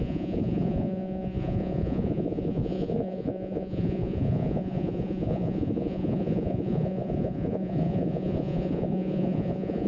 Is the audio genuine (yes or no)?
no